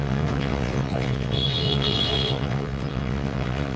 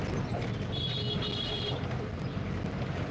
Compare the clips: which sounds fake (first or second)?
first